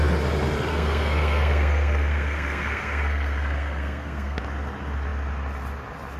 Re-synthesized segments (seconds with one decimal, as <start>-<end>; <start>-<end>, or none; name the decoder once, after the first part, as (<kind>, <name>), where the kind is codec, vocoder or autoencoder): 0.7-4.4 (codec, SNAC)